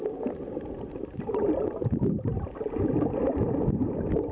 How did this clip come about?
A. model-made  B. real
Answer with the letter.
B